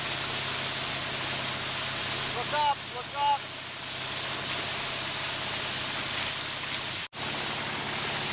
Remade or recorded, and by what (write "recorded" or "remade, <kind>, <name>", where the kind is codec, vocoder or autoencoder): recorded